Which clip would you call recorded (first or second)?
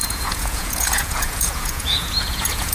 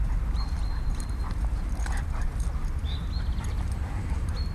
second